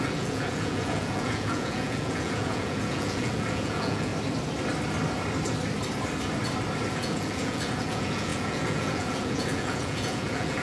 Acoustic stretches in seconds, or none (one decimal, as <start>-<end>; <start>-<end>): 4.1-6.9